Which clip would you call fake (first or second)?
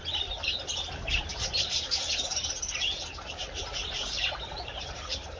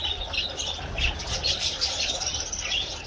first